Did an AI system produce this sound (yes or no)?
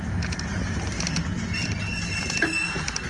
no